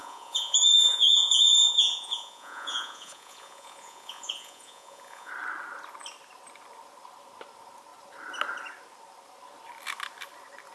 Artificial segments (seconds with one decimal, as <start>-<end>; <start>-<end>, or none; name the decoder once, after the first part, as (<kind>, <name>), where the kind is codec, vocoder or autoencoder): 0.0-5.3 (vocoder, Vocos)